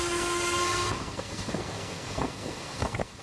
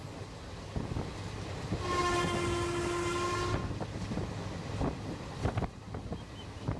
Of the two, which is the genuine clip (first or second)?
second